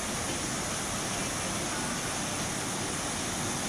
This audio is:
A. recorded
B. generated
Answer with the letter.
A